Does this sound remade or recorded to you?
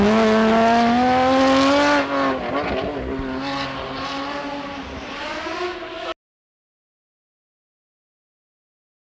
recorded